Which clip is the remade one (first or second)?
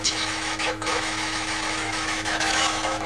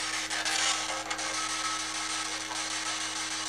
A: first